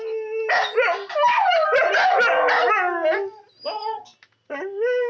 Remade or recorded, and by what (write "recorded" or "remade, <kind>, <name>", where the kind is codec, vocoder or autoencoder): recorded